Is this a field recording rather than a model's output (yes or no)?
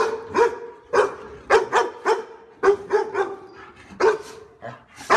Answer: yes